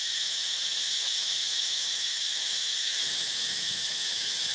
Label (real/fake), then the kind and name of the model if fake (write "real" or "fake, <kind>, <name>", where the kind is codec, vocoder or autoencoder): fake, autoencoder, DAC-VAE